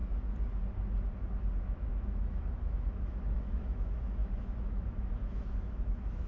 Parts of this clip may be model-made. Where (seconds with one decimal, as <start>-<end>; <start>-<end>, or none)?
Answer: 1.6-6.3